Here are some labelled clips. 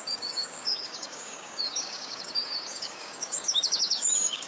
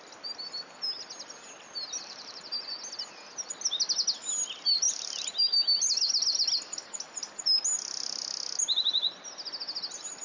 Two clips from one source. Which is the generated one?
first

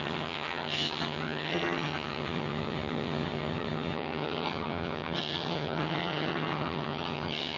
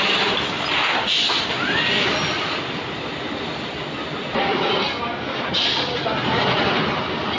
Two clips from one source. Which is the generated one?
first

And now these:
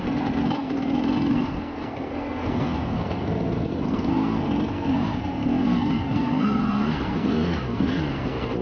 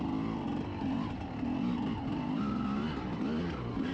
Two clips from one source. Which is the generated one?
first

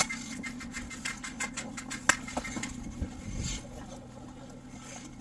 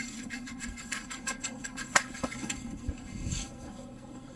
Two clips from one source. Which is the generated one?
second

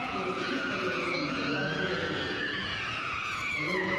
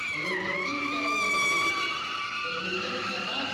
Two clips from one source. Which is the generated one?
first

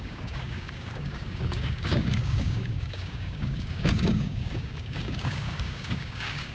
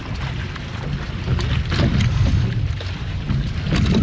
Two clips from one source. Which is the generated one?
first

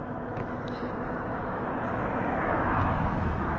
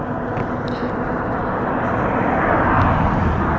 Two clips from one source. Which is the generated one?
first